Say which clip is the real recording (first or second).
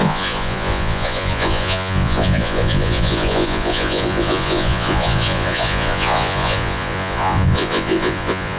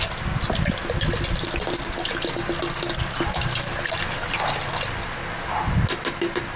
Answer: second